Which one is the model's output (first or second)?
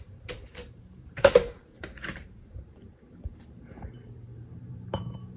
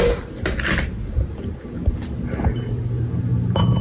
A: first